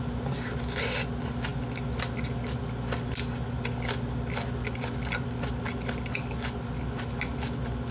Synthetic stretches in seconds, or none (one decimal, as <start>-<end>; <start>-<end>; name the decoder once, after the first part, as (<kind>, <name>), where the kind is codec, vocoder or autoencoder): none